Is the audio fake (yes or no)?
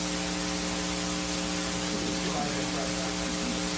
no